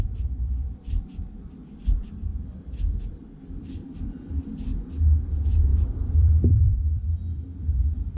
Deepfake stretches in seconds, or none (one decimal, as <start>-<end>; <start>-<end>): 0.0-2.3; 3.1-4.7; 5.3-7.0; 7.6-8.2